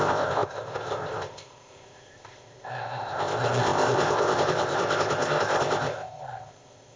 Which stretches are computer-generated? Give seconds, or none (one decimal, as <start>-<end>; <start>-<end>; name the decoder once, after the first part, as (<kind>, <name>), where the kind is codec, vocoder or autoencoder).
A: 0.0-7.0 (codec, ZipCodec)